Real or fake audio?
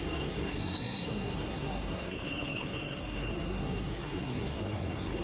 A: fake